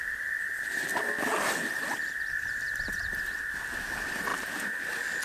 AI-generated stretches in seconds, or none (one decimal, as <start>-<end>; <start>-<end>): 4.3-4.8